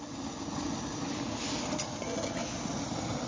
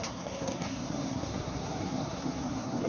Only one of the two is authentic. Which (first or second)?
first